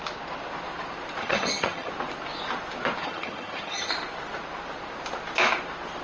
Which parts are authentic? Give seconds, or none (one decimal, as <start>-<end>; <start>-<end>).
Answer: 0.0-1.2; 1.9-3.0; 3.9-6.0